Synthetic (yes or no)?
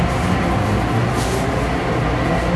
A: no